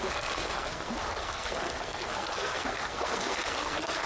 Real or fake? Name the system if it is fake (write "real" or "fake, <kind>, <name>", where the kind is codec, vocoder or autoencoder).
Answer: fake, codec, SNAC